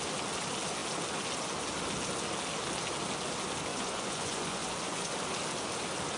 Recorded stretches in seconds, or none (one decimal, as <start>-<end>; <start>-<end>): 0.0-3.7; 5.1-6.2

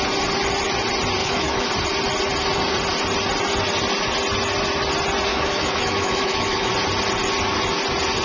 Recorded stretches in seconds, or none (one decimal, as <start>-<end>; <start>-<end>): 0.0-1.2; 1.7-5.3; 6.7-8.2